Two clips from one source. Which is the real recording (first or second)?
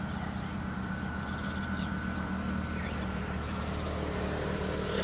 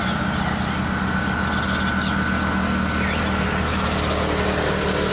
second